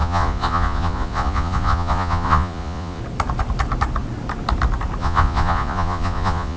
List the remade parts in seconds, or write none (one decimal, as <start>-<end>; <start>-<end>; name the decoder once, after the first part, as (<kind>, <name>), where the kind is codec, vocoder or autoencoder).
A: 0.0-3.0 (vocoder, Vocos); 5.0-6.6